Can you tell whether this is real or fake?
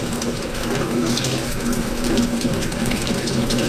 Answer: fake